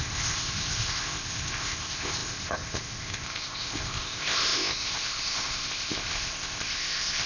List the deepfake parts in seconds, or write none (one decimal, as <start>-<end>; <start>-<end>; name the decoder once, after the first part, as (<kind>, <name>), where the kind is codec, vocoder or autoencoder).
0.0-7.3 (codec, ZipCodec)